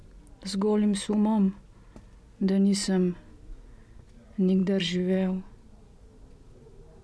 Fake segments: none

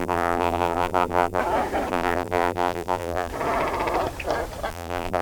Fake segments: 0.0-1.4; 1.9-3.3; 4.7-5.2

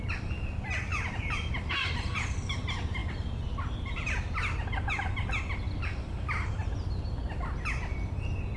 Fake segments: 0.9-2.2

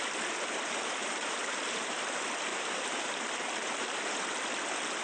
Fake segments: 1.0-2.0; 2.5-4.0

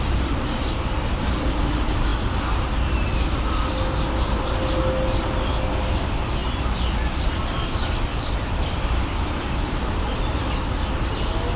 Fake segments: none

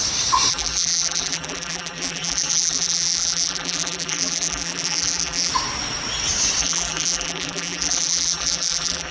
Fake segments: 0.5-5.5; 6.6-9.1